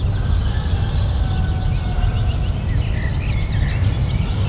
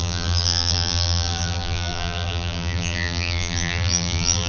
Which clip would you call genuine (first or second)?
first